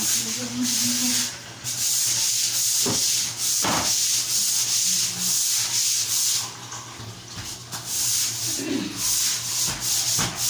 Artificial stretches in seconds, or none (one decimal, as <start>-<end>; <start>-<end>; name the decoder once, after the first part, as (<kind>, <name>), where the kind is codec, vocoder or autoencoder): none